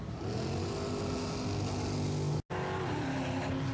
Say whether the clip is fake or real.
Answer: real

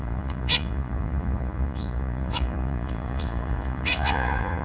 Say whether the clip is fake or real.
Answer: fake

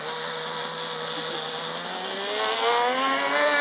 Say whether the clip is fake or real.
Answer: real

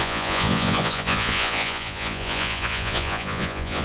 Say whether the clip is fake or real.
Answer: fake